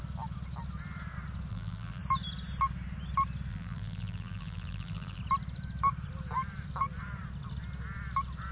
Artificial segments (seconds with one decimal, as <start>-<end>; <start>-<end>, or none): 1.5-2.0; 3.5-5.2